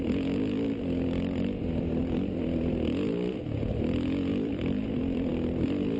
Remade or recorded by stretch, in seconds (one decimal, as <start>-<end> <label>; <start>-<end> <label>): 0.0-2.0 recorded; 2.0-2.7 remade; 2.7-4.3 recorded; 4.3-5.3 remade; 5.3-6.0 recorded